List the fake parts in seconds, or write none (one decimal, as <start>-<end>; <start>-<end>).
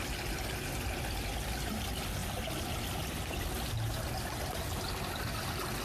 none